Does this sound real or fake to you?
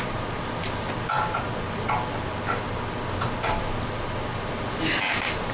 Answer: real